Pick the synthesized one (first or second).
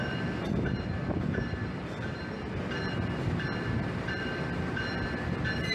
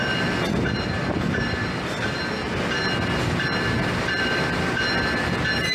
first